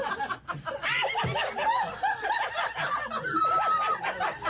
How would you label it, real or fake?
real